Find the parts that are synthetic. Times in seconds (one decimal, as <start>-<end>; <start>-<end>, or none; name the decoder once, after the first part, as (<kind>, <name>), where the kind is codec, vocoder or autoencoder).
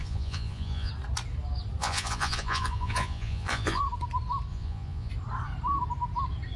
0.0-0.9 (vocoder, Vocos); 1.8-3.8; 4.5-5.1